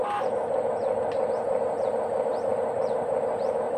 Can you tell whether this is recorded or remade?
recorded